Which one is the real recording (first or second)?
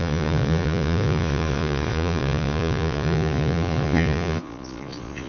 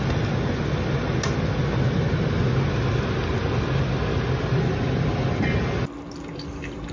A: second